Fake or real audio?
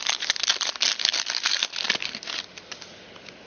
real